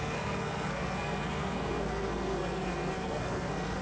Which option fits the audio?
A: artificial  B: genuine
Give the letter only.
A